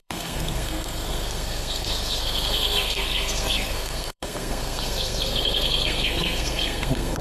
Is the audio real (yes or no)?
no